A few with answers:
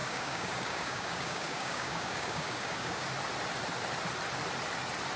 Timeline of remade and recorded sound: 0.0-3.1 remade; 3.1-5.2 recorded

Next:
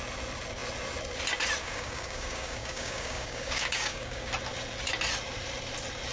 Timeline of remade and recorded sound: 0.0-1.6 recorded; 1.6-4.3 remade; 4.3-6.1 recorded

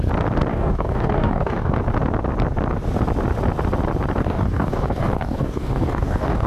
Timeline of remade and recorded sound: 0.0-0.5 recorded; 0.5-1.7 remade; 1.7-4.2 recorded; 4.2-6.5 remade